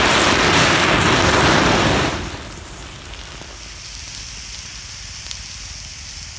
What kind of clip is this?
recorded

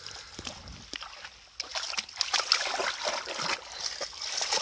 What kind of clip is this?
recorded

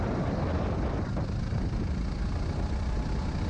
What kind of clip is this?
recorded